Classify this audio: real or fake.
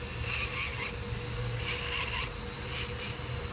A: real